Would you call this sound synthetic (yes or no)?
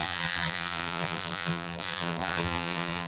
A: yes